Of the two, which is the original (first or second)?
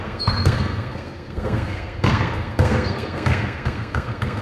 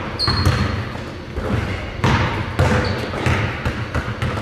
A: second